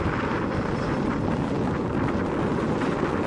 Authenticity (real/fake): real